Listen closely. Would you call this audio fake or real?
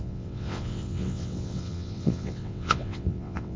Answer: fake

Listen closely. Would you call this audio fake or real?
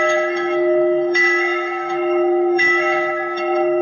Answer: fake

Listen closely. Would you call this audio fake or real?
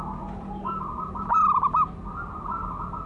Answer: fake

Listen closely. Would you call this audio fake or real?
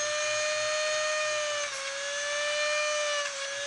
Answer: real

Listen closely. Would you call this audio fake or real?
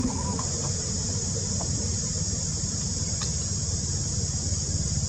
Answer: fake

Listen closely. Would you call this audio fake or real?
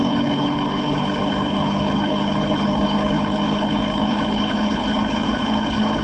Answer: fake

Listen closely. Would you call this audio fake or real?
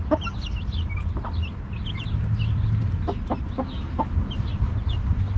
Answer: real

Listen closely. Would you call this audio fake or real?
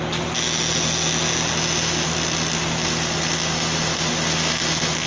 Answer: real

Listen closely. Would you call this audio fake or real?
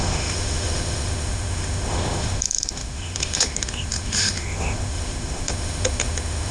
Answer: fake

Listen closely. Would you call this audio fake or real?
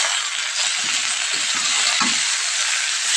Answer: real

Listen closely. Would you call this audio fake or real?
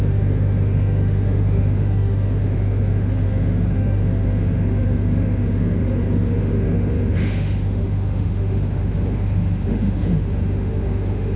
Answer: fake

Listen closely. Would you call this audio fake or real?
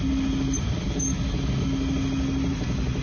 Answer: real